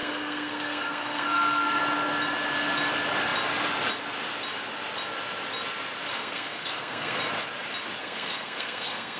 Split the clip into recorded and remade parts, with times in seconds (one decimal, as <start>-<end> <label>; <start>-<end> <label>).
0.0-1.8 remade; 1.8-6.1 recorded; 6.1-7.2 remade; 7.2-8.0 recorded; 8.0-9.2 remade

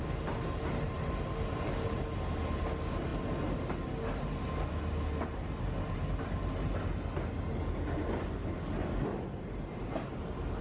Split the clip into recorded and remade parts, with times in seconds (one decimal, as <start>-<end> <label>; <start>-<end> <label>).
0.0-10.6 recorded

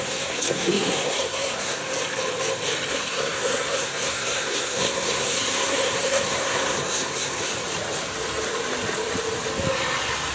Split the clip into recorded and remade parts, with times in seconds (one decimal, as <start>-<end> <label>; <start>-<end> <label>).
0.0-1.8 remade; 1.8-2.9 recorded; 2.9-7.5 remade; 7.5-10.3 recorded